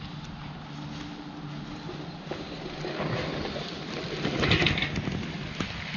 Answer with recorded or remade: recorded